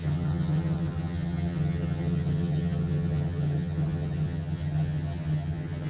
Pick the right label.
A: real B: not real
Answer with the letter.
B